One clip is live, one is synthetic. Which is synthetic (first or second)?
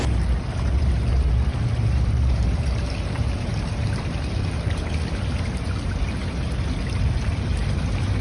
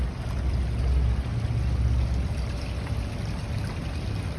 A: first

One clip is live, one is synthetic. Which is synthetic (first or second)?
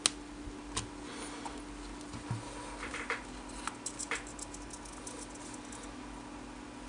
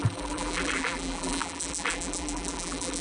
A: second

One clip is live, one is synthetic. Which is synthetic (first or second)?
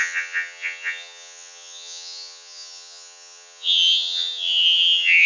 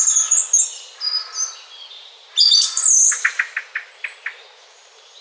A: first